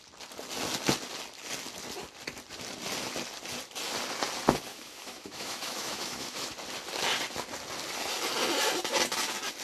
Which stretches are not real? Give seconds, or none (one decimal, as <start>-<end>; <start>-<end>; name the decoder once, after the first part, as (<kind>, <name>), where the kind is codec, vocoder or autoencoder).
4.7-6.5 (autoencoder, DAC-VAE)